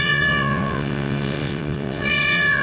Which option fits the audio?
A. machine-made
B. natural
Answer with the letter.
A